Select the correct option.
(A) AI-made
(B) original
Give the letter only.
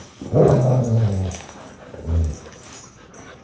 A